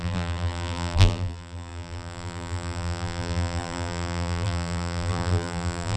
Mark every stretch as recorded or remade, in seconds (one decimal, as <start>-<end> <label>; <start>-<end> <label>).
0.0-6.0 remade